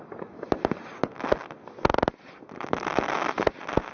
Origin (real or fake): real